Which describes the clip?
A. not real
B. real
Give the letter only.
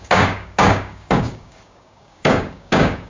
A